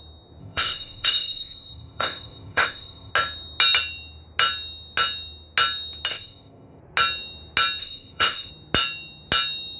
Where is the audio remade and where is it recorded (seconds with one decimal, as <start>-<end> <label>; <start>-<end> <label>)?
0.0-0.4 recorded; 0.4-3.1 remade; 3.1-6.1 recorded; 6.1-6.8 remade; 6.8-7.8 recorded; 7.8-8.5 remade; 8.5-9.8 recorded